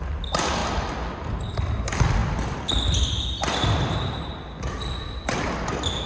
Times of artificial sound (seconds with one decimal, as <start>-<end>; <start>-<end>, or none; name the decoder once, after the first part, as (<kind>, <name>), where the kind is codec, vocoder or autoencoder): none